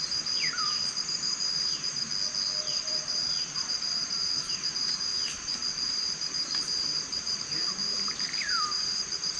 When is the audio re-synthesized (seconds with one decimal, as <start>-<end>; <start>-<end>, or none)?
0.0-2.1; 2.7-9.4